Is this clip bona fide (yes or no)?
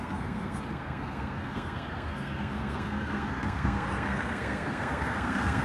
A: no